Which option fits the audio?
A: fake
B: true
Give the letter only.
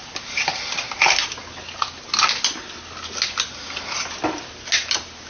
B